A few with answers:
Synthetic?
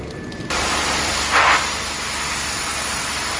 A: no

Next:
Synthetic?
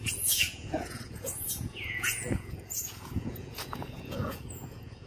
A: yes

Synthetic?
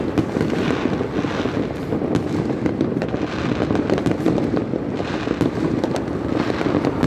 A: no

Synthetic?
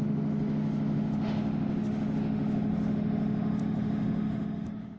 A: yes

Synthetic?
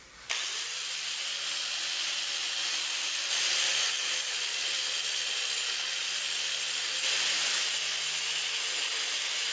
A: no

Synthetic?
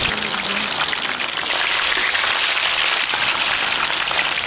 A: no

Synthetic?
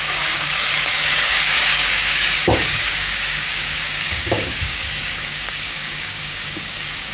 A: yes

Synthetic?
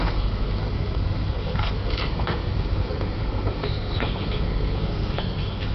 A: yes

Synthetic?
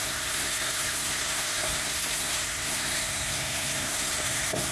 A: yes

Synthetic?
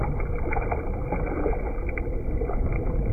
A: no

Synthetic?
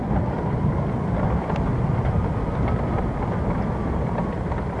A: no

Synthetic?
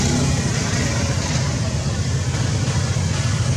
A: no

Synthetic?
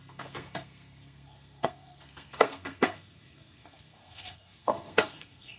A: yes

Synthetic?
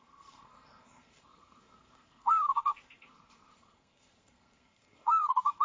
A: yes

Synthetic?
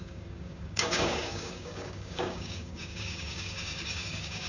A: yes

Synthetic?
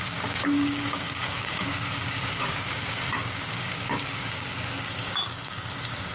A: yes